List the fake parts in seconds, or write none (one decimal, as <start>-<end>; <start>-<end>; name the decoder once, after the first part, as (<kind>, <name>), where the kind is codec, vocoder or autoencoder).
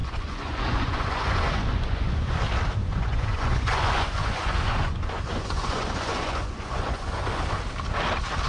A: 0.0-2.4 (vocoder, Vocos); 2.8-7.4